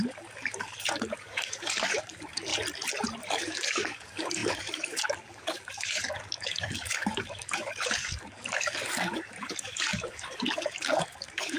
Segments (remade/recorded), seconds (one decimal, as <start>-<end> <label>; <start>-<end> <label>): 0.0-2.5 remade; 2.5-3.3 recorded; 3.3-11.6 remade